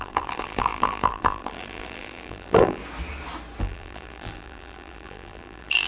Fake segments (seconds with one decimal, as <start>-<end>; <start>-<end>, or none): 0.0-2.8; 3.6-5.9